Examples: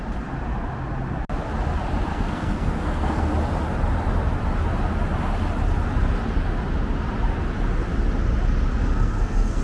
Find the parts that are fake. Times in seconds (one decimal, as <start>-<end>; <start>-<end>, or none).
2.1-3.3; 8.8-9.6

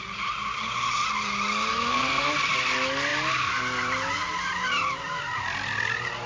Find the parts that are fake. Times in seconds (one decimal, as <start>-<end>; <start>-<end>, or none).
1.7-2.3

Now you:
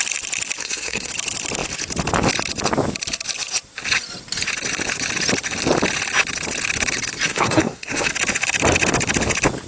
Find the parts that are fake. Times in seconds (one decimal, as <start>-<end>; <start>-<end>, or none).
0.6-1.1; 7.3-8.1

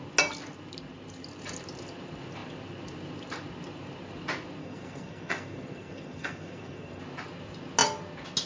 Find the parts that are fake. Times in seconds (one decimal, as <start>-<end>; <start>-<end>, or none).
4.6-7.0

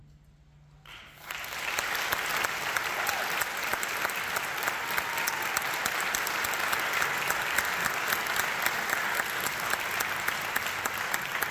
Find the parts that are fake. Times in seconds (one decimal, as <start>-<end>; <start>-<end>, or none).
none

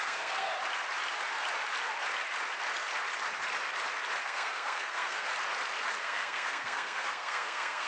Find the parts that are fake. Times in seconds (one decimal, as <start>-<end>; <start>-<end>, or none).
0.0-0.5; 4.2-5.3; 6.0-7.9

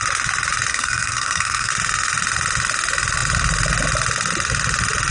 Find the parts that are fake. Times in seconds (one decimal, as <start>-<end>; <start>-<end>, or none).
0.7-1.7